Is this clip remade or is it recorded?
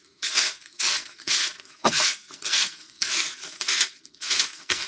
remade